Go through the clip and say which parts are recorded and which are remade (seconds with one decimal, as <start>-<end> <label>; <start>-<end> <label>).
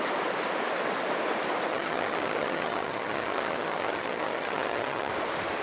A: 0.0-1.7 recorded; 1.7-5.1 remade; 5.1-5.6 recorded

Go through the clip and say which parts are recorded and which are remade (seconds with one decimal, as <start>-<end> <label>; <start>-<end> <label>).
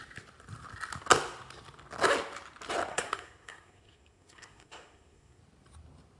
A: 0.0-2.9 recorded; 2.9-5.4 remade; 5.4-6.2 recorded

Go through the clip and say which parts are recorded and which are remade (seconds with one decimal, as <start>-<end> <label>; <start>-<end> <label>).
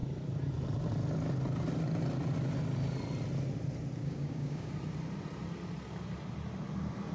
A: 0.0-4.0 recorded; 4.0-4.7 remade; 4.7-7.1 recorded